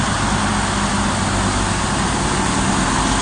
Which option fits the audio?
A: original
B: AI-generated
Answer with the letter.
A